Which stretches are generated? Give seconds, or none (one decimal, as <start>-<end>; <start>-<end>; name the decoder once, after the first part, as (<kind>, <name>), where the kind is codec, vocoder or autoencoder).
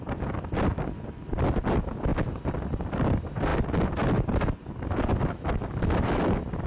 none